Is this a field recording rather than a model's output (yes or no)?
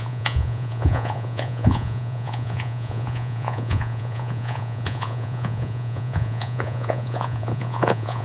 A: no